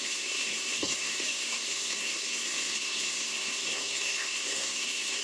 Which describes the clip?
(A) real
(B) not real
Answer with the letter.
B